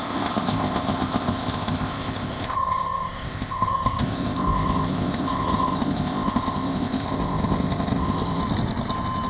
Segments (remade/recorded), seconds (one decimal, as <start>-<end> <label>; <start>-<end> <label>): 0.0-8.4 remade; 8.4-9.3 recorded